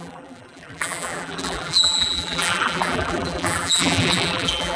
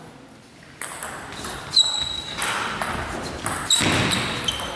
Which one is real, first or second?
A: second